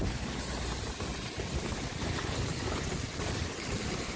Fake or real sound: real